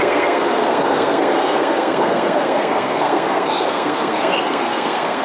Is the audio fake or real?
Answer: fake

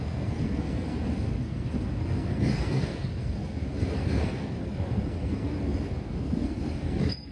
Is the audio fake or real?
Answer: fake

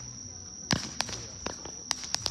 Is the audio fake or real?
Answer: real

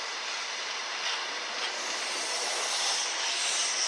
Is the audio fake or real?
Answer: real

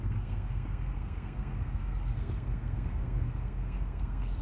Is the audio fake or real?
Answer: fake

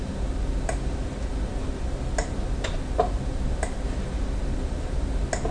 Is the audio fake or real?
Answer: real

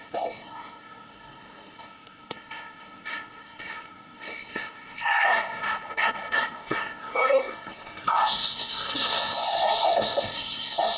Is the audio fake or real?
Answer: fake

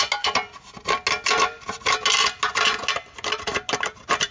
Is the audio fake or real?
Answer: real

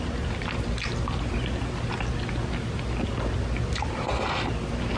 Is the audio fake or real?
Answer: real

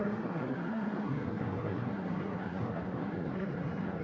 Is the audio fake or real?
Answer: fake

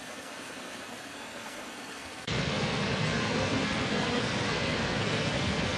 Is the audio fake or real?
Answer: fake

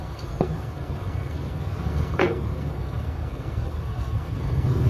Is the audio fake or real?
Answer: fake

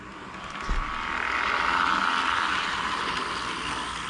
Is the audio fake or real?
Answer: real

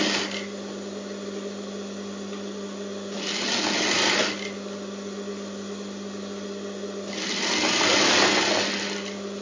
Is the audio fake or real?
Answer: real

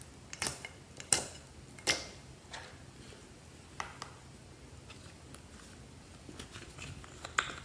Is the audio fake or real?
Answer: real